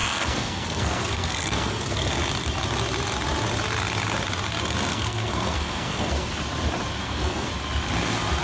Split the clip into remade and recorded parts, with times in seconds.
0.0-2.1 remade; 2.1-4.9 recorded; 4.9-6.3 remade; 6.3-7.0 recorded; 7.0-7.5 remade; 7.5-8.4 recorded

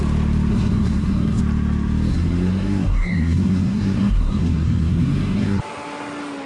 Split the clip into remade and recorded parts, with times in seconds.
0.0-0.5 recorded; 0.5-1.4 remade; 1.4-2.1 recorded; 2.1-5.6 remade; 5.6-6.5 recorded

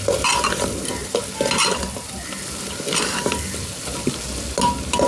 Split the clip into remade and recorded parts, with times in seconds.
0.0-5.1 recorded

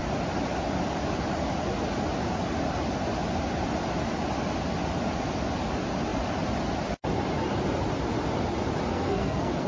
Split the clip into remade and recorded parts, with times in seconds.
0.0-8.9 recorded; 8.9-9.7 remade

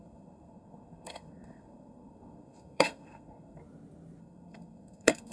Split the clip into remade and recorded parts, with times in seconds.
0.0-3.6 remade; 3.6-4.2 recorded; 4.2-5.3 remade

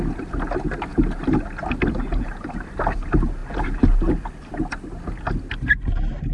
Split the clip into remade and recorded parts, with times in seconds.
0.0-6.3 recorded

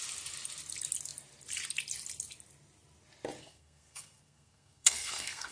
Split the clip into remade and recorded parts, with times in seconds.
0.0-3.4 recorded; 3.4-5.5 remade